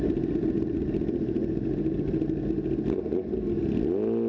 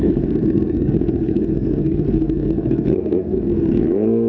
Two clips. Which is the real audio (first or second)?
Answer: first